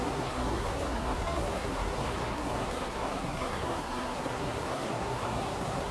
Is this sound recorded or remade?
remade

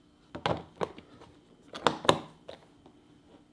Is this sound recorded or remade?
recorded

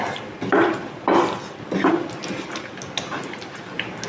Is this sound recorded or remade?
recorded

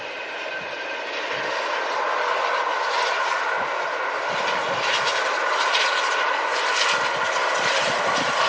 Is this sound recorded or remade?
recorded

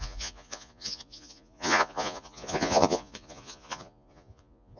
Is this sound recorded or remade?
remade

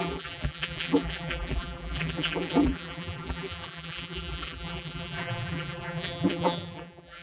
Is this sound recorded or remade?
remade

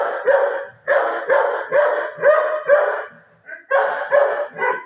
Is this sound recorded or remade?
recorded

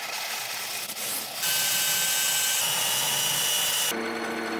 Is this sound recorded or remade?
recorded